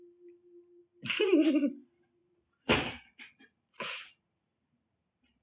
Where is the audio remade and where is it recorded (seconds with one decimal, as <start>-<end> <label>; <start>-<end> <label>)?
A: 0.0-2.2 recorded; 2.2-5.4 remade